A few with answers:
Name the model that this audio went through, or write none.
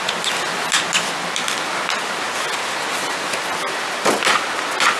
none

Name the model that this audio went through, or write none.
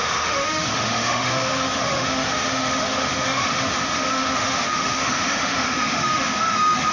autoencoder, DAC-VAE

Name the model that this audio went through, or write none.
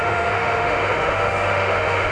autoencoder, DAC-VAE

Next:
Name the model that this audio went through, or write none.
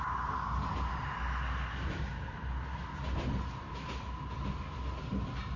none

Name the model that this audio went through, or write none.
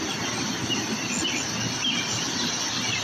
none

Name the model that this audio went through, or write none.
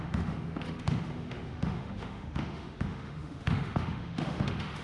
autoencoder, DAC-VAE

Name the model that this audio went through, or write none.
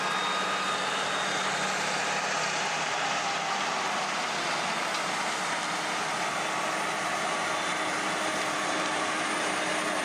none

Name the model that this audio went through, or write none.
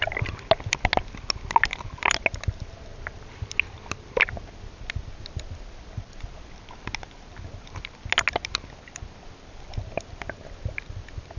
none